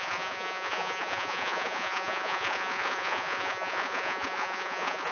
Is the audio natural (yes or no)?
no